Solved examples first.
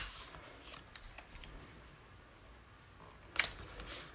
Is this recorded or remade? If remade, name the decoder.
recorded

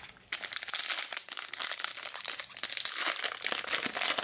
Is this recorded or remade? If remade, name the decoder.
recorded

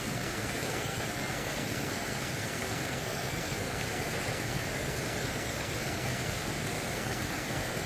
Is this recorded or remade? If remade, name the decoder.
remade, codec, SNAC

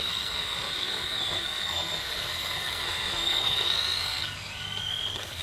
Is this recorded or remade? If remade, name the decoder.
remade, codec, SNAC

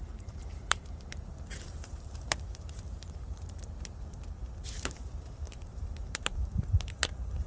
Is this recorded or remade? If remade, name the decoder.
remade, vocoder, BigVGAN v2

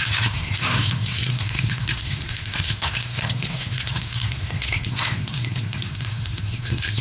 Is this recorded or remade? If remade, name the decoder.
remade, codec, SNAC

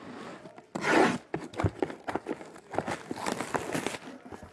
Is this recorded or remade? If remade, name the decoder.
recorded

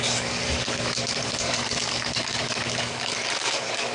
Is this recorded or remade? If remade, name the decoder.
remade, codec, DAC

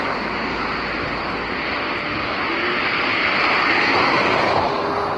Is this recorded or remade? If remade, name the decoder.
recorded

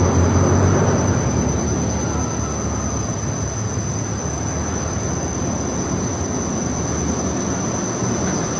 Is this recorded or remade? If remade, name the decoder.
recorded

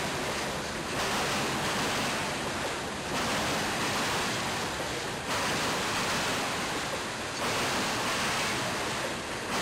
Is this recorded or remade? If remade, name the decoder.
recorded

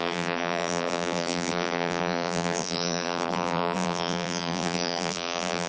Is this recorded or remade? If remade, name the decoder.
remade, vocoder, BigVGAN v2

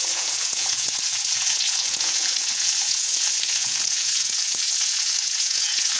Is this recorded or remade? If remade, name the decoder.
remade, vocoder, Vocos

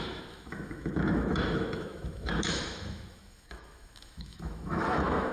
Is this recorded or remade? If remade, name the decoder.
remade, autoencoder, DAC-VAE